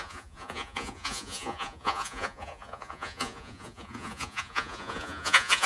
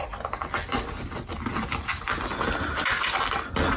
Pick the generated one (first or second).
first